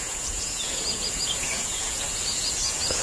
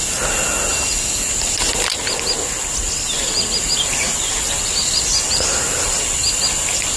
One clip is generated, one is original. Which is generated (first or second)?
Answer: first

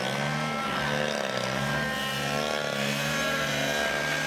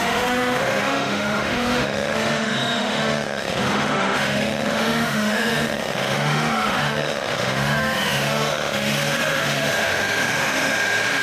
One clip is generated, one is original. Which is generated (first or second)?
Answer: second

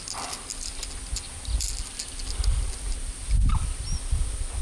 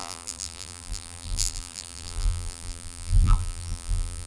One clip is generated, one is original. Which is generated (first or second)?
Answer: second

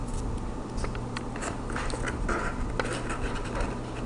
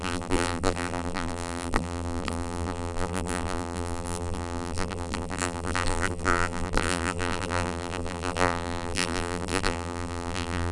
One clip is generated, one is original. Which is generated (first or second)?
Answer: second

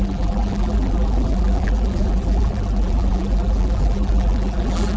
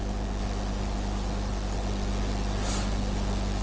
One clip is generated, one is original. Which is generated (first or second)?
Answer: first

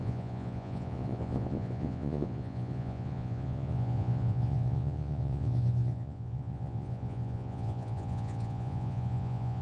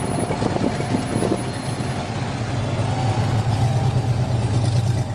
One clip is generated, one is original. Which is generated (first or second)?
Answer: first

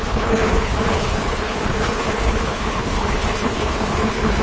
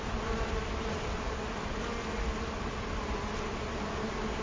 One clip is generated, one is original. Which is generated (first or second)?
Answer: first